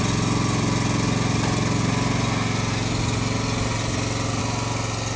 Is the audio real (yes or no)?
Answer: yes